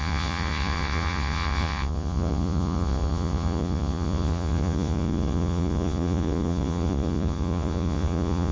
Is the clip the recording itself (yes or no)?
no